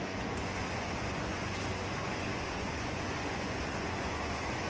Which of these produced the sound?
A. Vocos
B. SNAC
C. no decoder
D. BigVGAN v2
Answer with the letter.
A